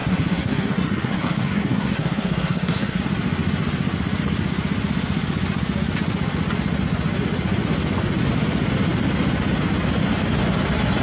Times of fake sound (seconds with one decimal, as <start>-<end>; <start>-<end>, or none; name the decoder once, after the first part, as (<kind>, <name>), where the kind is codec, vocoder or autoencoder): 0.0-3.0 (codec, SNAC)